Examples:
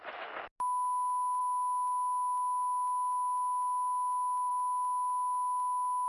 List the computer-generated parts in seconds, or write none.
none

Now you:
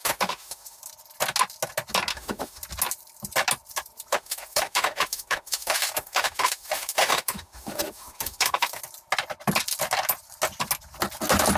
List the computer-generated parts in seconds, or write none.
0.0-0.8 (autoencoder, DAC-VAE); 2.1-2.6; 4.1-8.8

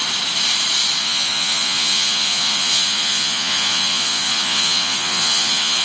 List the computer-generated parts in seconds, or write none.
1.0-5.8 (vocoder, Vocos)

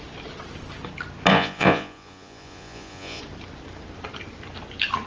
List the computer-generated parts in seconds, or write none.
1.3-3.2 (vocoder, Vocos)

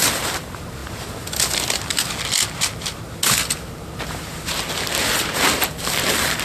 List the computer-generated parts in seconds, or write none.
none

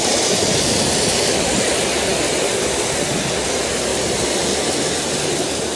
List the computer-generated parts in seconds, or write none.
none

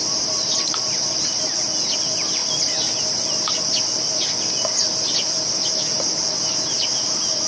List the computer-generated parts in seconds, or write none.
none

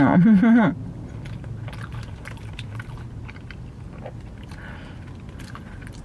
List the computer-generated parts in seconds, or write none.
1.9-3.2 (vocoder, BigVGAN v2)